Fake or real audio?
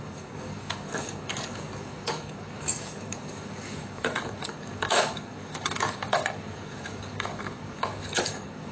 fake